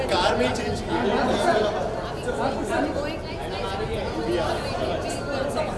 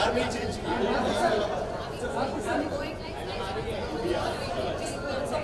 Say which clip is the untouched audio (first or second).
first